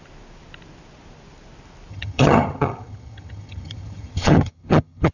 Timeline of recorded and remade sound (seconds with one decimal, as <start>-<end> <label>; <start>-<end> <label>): 0.0-1.9 recorded; 1.9-5.1 remade